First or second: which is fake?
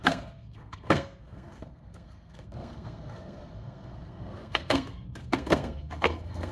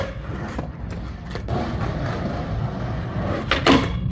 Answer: first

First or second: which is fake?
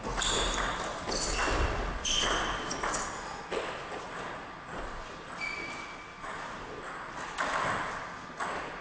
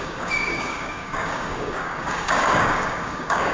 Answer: second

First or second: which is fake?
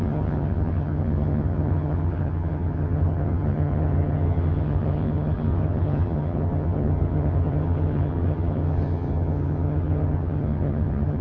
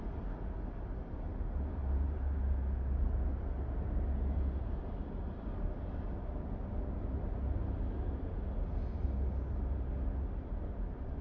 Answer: first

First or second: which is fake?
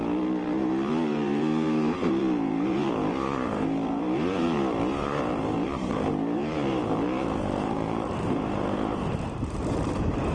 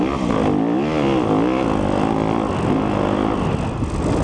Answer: first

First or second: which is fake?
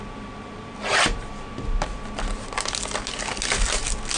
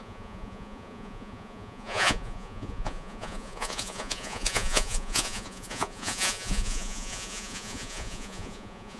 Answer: second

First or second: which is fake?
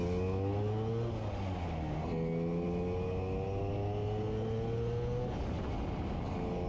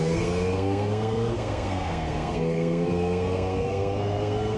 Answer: second